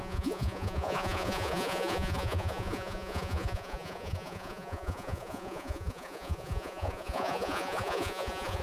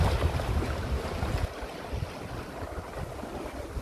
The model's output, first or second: first